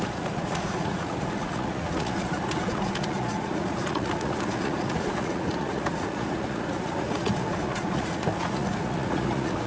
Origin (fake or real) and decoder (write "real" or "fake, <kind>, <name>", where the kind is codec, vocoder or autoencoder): fake, vocoder, Vocos